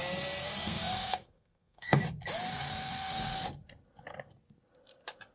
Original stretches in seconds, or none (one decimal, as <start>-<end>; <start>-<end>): 0.0-0.4; 2.0-2.5; 3.4-5.3